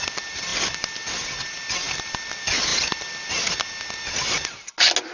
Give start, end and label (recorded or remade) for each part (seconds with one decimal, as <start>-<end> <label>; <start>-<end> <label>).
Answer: 0.0-5.1 recorded